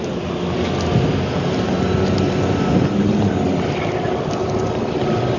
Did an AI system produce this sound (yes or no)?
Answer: no